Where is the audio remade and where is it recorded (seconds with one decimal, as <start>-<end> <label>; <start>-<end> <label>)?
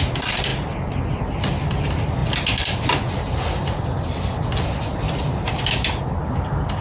0.0-4.9 recorded; 4.9-5.5 remade; 5.5-6.8 recorded